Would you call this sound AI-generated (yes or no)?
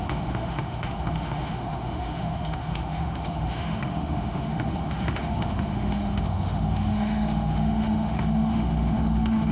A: yes